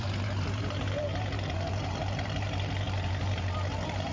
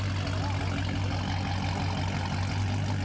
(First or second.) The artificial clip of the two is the first